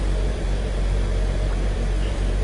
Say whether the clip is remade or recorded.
remade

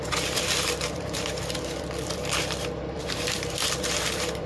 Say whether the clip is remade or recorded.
remade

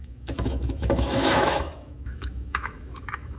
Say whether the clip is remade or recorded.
remade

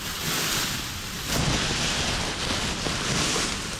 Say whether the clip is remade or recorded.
recorded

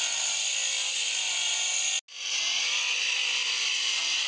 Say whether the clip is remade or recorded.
recorded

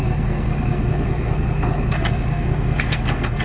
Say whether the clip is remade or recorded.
remade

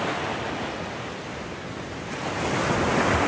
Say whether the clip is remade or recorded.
recorded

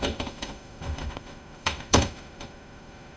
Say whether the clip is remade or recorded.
remade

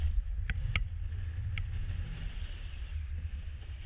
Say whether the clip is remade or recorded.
recorded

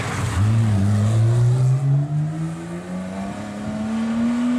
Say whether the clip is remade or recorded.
recorded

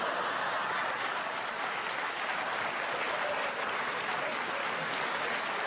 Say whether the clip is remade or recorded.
recorded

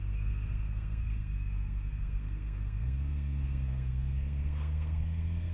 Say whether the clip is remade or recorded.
remade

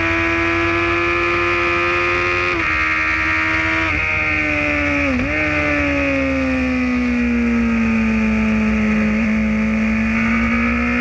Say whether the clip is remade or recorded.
recorded